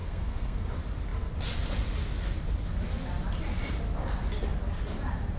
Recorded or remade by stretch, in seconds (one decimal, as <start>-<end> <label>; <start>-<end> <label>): 0.0-0.7 remade; 0.7-5.4 recorded